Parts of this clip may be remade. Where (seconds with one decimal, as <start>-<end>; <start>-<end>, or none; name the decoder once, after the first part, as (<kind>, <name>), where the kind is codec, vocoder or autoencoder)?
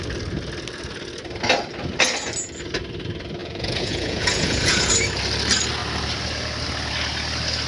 3.4-4.9 (vocoder, Vocos)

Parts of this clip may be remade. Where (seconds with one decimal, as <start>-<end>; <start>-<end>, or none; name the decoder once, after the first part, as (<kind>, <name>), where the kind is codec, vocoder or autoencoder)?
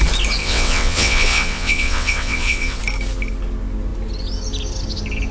0.4-2.8 (vocoder, WaveNeXt)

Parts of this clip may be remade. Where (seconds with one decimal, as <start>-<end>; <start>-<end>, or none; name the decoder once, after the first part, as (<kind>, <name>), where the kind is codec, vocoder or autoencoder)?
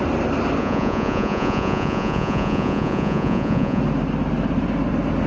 0.6-3.8 (vocoder, Vocos)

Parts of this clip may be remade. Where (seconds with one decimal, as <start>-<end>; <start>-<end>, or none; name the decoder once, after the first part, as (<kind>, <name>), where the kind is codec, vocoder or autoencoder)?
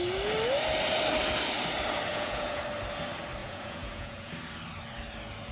2.1-2.6 (vocoder, Vocos); 3.4-4.3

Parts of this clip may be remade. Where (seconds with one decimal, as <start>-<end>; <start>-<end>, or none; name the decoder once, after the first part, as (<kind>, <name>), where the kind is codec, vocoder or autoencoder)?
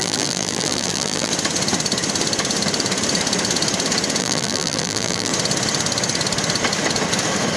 0.0-1.3 (vocoder, BigVGAN v2); 4.2-5.3